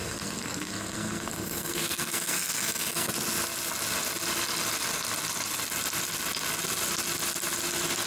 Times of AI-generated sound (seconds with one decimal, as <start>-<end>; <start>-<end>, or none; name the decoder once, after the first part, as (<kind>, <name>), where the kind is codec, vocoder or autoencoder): 0.0-3.1 (codec, SNAC)